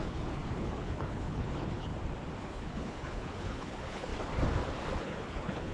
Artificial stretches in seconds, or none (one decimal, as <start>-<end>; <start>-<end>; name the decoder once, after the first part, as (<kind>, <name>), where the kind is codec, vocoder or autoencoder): 0.0-1.9 (codec, HILCodec); 2.4-4.1; 5.0-5.7